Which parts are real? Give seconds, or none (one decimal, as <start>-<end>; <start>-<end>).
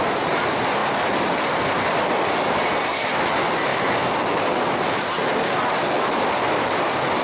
0.0-7.2